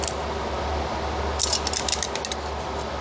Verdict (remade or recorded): recorded